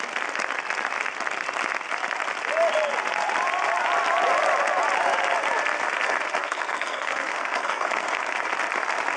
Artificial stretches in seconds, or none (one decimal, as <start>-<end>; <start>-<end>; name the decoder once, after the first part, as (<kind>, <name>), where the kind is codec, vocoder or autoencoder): 6.4-8.2 (codec, SNAC)